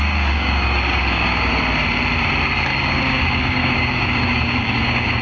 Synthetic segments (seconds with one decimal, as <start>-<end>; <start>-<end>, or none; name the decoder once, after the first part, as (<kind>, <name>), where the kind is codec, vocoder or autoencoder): 0.0-1.5 (codec, DAC); 2.7-5.2